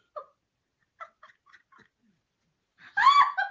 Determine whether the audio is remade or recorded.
recorded